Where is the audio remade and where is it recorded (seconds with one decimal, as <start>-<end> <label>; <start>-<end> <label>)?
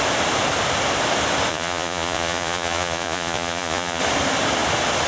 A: 0.0-1.5 recorded; 1.5-4.0 remade; 4.0-5.1 recorded